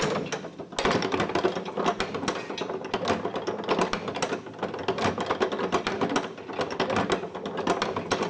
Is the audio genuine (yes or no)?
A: yes